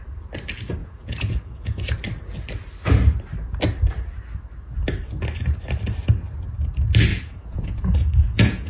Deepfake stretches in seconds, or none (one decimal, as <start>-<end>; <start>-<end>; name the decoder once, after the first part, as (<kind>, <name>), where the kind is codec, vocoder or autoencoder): 0.8-1.9 (vocoder, Vocos); 7.1-8.7